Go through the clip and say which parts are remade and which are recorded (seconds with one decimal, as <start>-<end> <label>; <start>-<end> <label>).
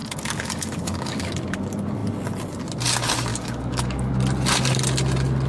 0.0-1.3 remade; 1.3-3.3 recorded; 3.3-4.1 remade; 4.1-5.5 recorded